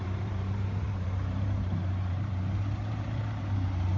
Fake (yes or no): yes